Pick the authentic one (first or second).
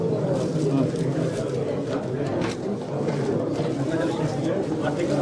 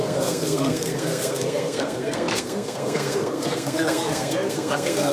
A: first